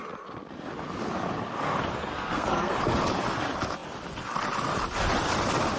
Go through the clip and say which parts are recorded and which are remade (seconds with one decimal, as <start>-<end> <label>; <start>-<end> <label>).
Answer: 0.0-2.1 recorded; 2.1-2.7 remade; 2.7-5.8 recorded